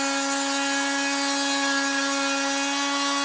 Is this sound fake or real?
real